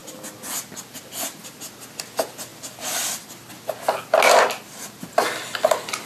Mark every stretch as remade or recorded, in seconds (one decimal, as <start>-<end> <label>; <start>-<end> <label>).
0.0-6.1 recorded